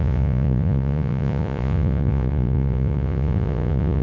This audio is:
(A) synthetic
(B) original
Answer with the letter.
A